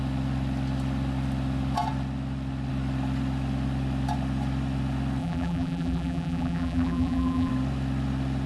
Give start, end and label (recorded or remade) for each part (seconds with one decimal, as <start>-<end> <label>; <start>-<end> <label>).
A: 0.0-5.2 recorded; 5.2-7.5 remade; 7.5-8.5 recorded